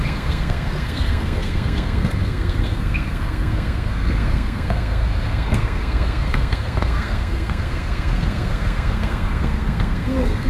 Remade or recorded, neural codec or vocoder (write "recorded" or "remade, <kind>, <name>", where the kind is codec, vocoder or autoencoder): remade, codec, SNAC